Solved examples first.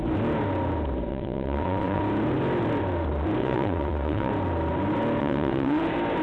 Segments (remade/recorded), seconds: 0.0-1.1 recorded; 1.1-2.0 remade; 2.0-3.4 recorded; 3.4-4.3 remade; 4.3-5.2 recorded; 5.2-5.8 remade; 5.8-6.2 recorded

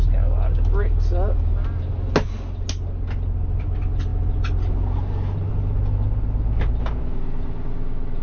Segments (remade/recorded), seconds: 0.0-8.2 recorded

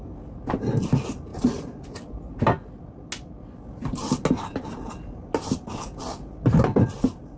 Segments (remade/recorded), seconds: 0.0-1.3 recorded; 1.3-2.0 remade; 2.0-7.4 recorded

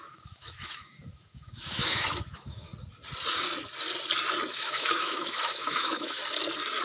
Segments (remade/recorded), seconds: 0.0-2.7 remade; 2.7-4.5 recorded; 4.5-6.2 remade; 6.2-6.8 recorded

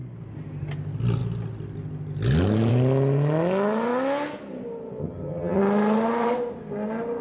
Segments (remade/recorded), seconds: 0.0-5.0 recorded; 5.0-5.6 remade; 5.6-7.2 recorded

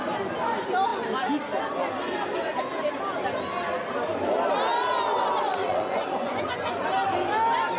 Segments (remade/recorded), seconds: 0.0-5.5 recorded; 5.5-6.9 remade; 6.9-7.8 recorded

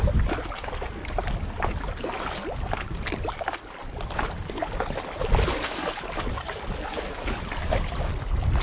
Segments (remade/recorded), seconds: 0.0-8.6 recorded

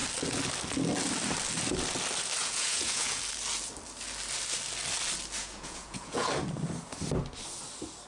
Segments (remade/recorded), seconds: 0.0-2.4 recorded; 2.4-3.2 remade; 3.2-5.4 recorded; 5.4-6.3 remade; 6.3-8.1 recorded